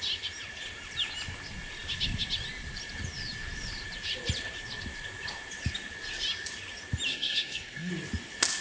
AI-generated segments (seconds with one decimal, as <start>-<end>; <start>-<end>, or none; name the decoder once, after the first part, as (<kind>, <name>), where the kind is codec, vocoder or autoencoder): 7.1-7.9 (codec, SNAC)